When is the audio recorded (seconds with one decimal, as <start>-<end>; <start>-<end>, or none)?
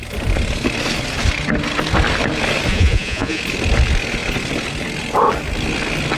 0.0-2.7; 3.4-6.2